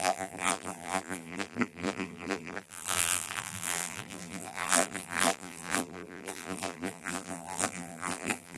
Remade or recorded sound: remade